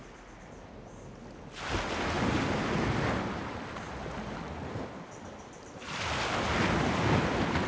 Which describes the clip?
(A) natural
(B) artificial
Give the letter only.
A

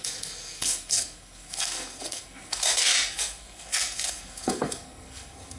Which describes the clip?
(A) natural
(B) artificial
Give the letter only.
B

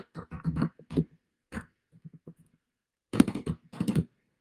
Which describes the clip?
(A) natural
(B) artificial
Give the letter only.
B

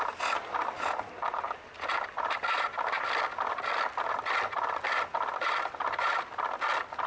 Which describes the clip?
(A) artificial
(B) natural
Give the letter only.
B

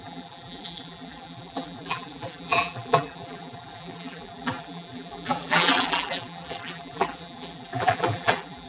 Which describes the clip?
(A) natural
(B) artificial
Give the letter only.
B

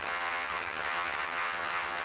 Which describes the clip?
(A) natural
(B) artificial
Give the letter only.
B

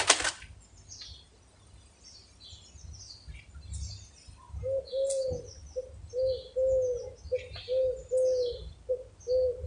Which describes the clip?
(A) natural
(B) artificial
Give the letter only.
A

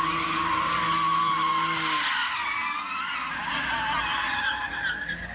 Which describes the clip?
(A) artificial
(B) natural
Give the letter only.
B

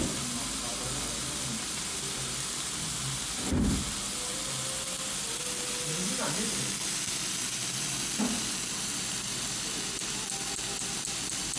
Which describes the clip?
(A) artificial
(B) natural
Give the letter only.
B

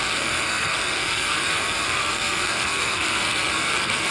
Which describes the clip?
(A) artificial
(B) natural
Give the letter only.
A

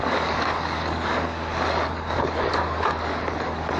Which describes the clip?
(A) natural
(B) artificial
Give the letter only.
B